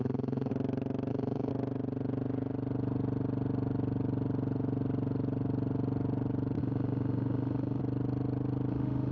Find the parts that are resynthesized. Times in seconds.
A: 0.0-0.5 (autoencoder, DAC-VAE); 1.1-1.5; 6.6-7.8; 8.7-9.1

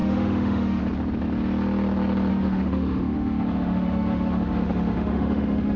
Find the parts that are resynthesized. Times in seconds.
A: 0.0-0.8 (autoencoder, DAC-VAE); 2.3-5.8